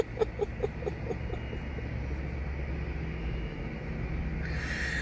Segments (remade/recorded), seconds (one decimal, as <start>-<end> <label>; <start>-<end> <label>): 0.0-3.2 recorded; 3.2-3.7 remade; 3.7-5.0 recorded